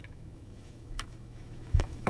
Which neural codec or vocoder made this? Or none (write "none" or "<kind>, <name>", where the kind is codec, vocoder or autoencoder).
autoencoder, DAC-VAE